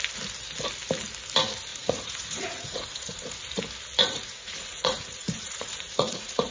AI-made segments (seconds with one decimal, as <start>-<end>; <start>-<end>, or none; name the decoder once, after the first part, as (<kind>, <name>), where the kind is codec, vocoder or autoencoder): 1.7-3.6 (vocoder, Vocos); 4.0-6.5